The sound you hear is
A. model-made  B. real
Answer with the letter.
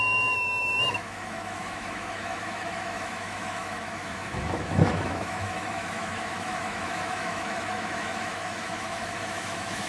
A